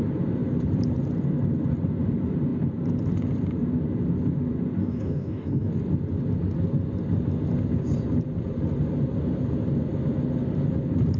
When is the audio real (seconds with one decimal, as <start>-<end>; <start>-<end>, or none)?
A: 0.0-4.8; 5.7-11.2